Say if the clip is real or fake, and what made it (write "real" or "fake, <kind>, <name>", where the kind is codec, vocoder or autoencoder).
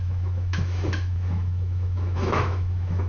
fake, autoencoder, DAC-VAE